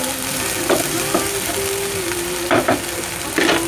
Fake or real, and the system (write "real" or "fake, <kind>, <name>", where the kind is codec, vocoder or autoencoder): real